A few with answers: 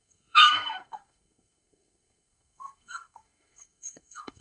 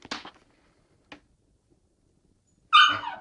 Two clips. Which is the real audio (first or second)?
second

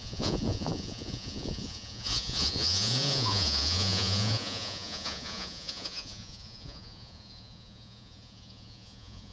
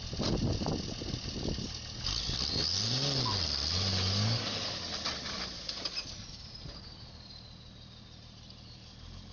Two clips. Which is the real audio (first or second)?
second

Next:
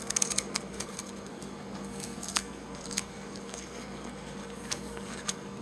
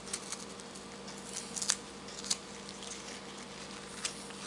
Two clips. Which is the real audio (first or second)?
second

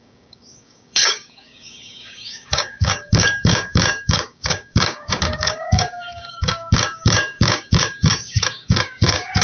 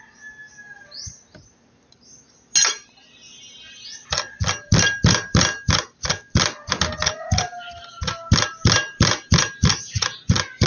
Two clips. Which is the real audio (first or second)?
second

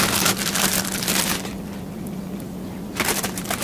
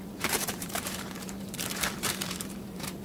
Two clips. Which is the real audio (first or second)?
first